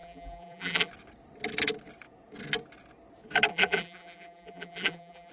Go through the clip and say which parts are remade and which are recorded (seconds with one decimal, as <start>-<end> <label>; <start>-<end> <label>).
0.0-0.9 remade; 0.9-3.5 recorded; 3.5-5.3 remade